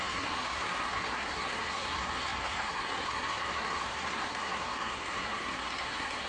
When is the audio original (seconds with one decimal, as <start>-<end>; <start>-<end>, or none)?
none